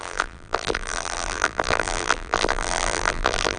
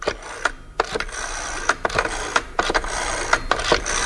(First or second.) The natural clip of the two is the second